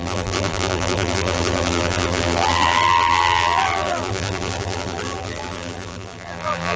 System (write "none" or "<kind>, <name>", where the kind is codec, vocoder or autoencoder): vocoder, BigVGAN v2